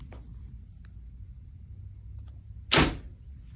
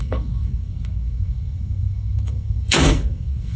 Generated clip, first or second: second